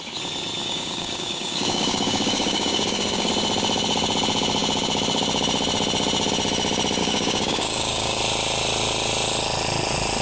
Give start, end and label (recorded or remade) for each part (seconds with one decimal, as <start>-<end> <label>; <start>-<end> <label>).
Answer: 0.0-0.6 recorded; 0.6-3.3 remade; 3.3-7.0 recorded; 7.0-8.2 remade; 8.2-10.2 recorded